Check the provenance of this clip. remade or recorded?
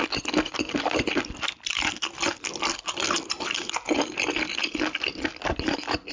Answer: recorded